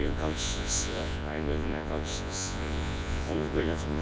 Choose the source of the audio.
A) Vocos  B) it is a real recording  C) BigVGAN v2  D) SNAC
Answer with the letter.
A